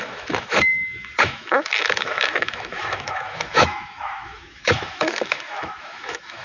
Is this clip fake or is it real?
fake